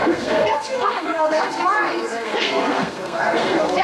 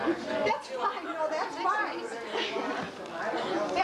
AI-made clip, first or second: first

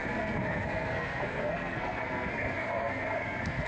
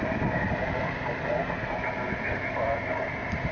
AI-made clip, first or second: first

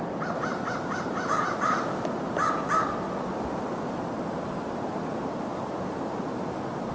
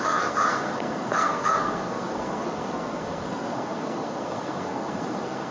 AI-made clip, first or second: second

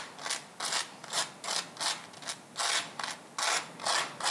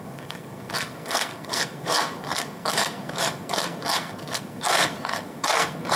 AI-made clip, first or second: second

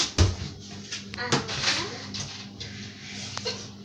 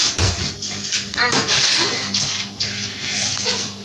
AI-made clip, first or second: second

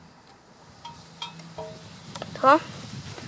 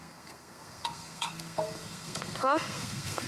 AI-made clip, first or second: second